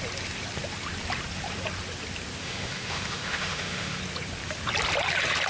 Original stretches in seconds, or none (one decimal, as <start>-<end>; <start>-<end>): 0.0-2.4; 4.0-5.5